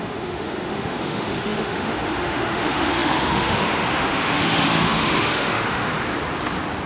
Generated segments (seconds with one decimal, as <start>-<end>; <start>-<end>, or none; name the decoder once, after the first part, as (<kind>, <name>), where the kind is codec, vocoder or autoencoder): 0.0-5.9 (autoencoder, DAC-VAE)